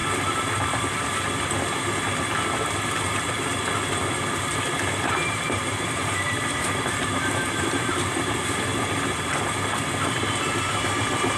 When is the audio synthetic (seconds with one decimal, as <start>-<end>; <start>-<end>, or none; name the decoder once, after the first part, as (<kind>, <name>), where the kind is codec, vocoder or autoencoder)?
4.3-8.7 (vocoder, BigVGAN v2); 10.4-11.4